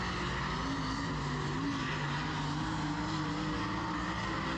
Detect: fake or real real